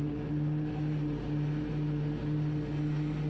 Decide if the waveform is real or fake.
real